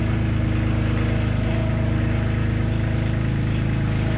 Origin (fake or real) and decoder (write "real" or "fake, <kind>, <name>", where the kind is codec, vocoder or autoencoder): real